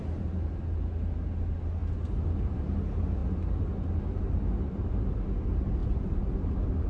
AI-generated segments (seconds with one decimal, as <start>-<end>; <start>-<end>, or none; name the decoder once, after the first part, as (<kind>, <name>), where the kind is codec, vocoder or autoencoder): none